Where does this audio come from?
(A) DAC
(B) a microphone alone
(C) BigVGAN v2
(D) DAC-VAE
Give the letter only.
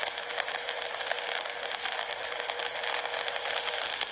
B